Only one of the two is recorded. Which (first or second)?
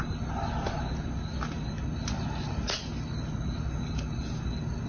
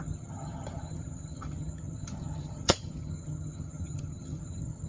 first